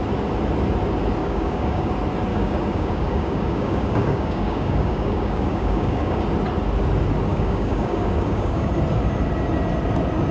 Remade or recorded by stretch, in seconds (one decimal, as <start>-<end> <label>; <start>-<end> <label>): 0.0-1.2 recorded; 1.2-1.9 remade; 1.9-2.3 recorded; 2.3-6.2 remade; 6.2-7.3 recorded; 7.3-8.7 remade; 8.7-10.3 recorded